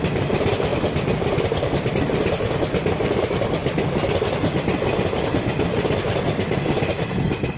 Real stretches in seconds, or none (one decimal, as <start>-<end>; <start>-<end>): 0.0-0.7; 1.9-3.6; 4.2-7.6